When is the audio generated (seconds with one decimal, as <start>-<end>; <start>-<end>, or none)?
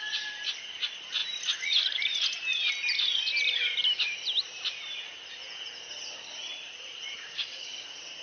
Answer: 5.4-5.9